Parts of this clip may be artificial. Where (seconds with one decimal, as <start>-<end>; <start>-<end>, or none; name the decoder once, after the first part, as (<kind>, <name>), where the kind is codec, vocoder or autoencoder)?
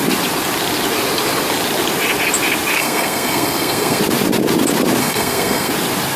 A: 2.8-4.0 (codec, SNAC); 5.0-5.7